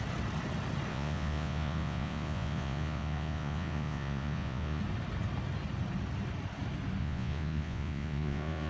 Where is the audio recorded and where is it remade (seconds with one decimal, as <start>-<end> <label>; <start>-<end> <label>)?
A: 0.0-0.9 recorded; 0.9-4.8 remade; 4.8-7.0 recorded; 7.0-8.7 remade